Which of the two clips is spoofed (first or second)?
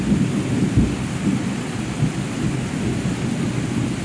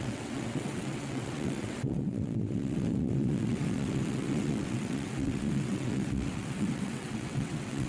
second